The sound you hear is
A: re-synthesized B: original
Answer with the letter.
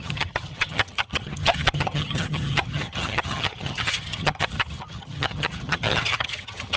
A